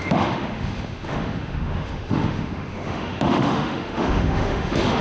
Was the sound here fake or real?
fake